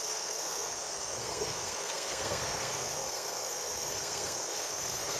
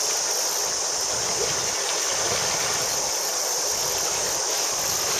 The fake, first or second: first